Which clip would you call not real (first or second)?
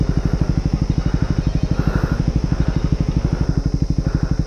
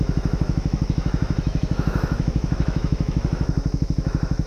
second